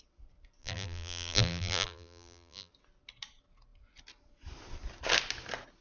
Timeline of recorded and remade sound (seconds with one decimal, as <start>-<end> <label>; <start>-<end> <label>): 0.0-0.6 recorded; 0.6-2.7 remade; 2.7-5.8 recorded